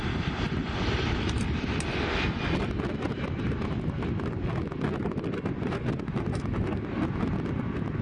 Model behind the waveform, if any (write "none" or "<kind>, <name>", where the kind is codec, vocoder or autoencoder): none